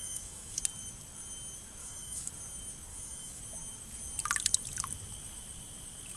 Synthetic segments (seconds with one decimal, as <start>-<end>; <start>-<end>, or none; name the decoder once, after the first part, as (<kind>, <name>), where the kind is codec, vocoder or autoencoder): 0.0-0.6 (autoencoder, DAC-VAE); 1.8-2.3; 2.9-3.4